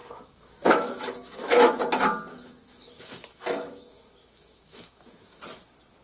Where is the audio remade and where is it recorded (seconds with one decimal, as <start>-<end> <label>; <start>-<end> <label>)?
0.0-1.6 remade; 1.6-2.3 recorded; 2.3-5.4 remade; 5.4-6.0 recorded